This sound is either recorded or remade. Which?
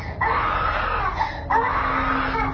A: recorded